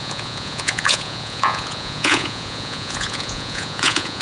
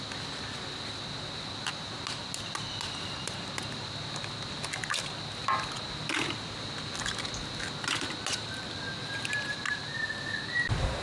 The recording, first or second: second